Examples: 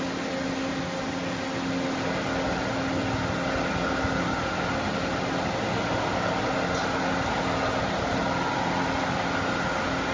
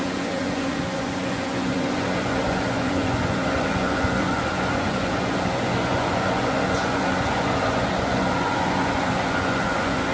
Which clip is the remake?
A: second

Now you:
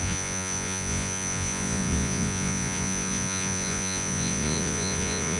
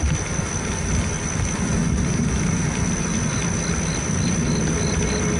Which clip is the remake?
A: first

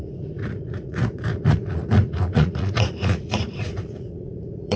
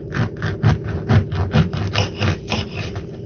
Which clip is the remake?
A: first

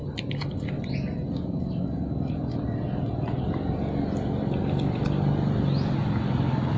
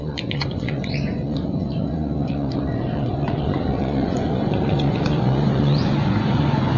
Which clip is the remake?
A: second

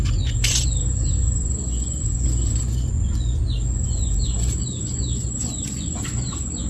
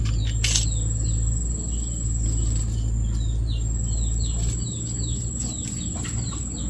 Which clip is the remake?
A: first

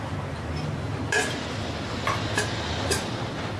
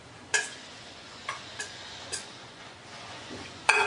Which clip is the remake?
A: second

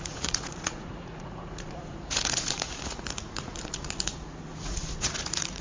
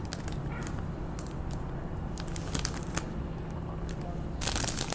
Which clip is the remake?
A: first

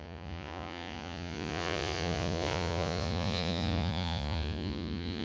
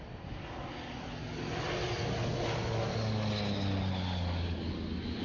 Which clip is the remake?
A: first